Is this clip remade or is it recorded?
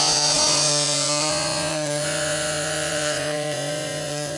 remade